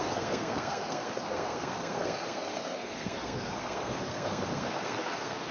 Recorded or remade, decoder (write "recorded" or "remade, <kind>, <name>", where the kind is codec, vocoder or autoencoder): remade, codec, SNAC